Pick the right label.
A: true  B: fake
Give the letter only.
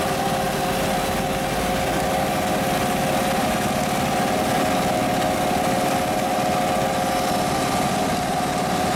A